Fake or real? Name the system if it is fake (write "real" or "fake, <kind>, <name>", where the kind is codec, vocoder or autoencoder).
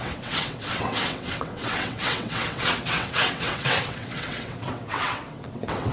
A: fake, vocoder, WaveNeXt